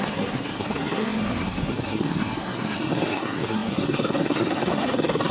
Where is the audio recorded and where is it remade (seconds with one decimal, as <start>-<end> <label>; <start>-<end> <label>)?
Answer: 0.0-5.3 remade